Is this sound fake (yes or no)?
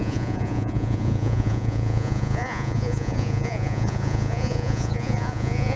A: yes